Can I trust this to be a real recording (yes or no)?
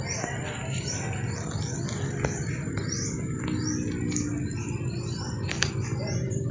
yes